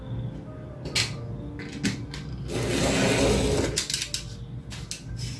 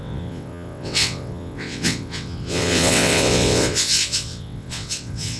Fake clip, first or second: second